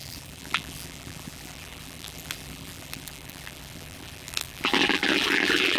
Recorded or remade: remade